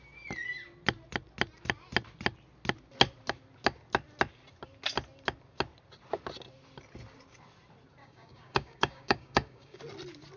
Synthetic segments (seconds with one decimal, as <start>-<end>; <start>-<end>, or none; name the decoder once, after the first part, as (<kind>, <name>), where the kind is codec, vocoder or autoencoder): 8.0-9.8 (codec, DAC)